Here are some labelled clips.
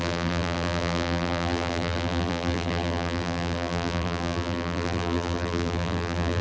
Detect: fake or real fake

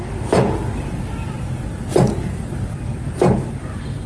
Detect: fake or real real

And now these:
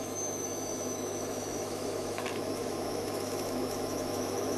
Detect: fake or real fake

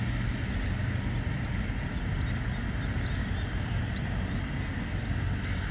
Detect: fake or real real